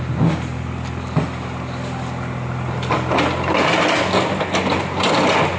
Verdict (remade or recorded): recorded